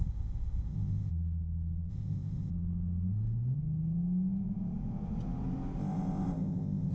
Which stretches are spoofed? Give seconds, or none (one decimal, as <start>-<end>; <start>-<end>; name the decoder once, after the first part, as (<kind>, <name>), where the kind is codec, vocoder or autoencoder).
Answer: 0.0-1.1 (codec, ZipCodec); 1.9-2.5; 5.8-6.9